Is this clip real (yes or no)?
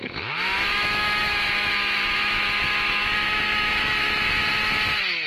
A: no